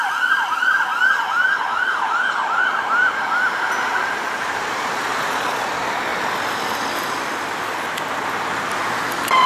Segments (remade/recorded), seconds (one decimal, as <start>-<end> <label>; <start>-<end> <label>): 0.0-1.9 recorded; 1.9-3.4 remade; 3.4-4.0 recorded; 4.0-4.9 remade; 4.9-9.5 recorded